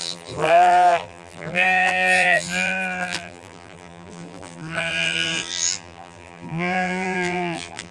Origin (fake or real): fake